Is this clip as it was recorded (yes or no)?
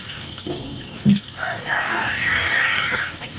no